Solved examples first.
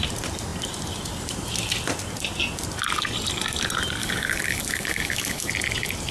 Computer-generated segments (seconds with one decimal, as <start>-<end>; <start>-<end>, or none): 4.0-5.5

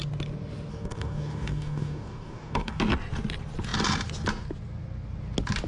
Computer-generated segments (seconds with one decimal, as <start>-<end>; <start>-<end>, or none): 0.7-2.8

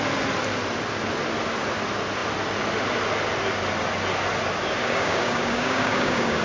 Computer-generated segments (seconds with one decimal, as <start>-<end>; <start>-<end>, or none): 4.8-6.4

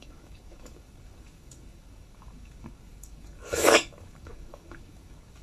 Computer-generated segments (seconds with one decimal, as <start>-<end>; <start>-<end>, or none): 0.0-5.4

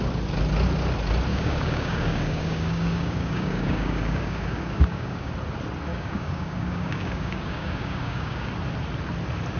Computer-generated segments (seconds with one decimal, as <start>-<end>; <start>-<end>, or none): 1.3-5.3; 5.9-8.5

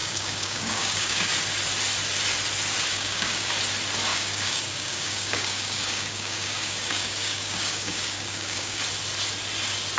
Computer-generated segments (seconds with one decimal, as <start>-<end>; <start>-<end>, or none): 0.0-1.3; 2.9-3.5; 4.1-8.8